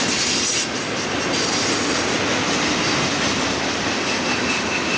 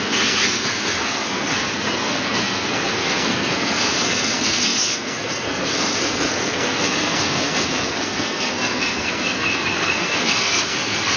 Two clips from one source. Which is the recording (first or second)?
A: first